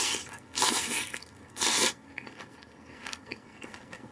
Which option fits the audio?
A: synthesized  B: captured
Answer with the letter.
A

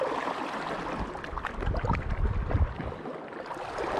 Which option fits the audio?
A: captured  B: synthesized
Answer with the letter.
A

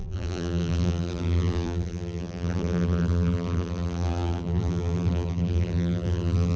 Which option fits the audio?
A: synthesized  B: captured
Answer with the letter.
A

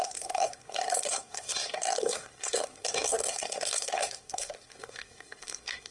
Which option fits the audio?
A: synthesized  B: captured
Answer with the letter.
A